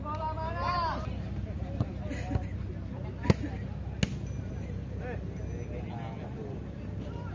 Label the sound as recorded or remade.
recorded